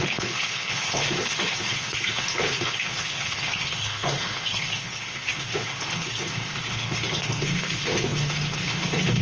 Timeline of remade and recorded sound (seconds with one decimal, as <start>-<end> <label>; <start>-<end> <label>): 0.0-9.2 remade